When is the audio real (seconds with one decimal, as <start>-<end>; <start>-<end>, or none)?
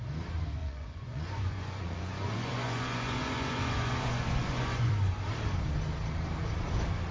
0.0-0.6; 4.9-7.1